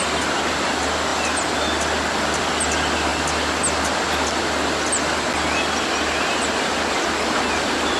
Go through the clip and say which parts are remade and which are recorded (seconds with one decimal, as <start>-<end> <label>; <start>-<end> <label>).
0.0-8.0 recorded